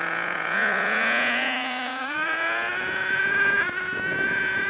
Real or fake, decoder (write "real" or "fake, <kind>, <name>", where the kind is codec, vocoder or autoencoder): fake, vocoder, Vocos